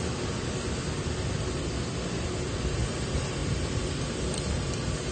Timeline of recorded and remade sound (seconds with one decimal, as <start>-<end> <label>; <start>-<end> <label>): 0.0-5.1 recorded